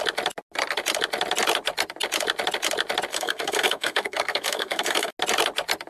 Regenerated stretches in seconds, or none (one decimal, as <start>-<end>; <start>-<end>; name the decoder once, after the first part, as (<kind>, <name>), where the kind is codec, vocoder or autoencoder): 3.1-5.1 (codec, SNAC)

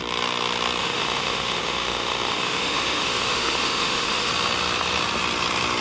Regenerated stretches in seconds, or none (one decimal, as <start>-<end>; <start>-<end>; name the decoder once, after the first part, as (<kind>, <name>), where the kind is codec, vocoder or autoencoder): 0.8-4.3 (autoencoder, DAC-VAE)

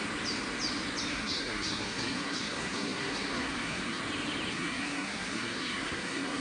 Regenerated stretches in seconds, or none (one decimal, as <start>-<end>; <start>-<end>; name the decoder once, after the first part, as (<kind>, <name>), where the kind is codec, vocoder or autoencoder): 1.1-4.0 (codec, SNAC); 4.5-6.4

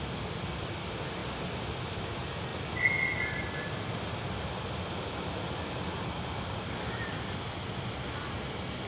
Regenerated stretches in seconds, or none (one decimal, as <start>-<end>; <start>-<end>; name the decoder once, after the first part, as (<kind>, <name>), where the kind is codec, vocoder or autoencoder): none

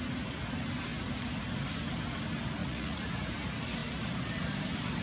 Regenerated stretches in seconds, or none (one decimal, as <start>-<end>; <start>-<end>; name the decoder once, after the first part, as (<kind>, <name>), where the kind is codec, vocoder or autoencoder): 2.6-3.1 (vocoder, Vocos)

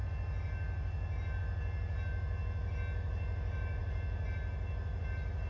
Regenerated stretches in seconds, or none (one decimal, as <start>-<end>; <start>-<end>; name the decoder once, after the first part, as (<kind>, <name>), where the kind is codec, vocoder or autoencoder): none

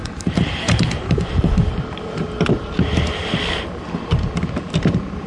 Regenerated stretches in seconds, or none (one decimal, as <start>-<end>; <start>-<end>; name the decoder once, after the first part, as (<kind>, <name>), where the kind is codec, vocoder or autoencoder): 0.0-2.2 (vocoder, BigVGAN v2)

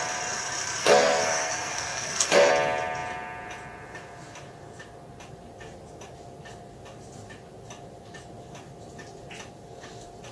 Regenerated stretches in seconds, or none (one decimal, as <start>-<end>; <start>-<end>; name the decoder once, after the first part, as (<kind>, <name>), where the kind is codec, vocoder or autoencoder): 0.8-2.5 (codec, SNAC)